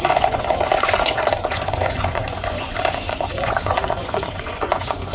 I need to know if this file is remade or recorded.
remade